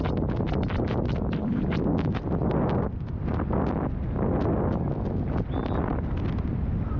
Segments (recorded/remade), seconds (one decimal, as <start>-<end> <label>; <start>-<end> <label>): 0.0-7.0 recorded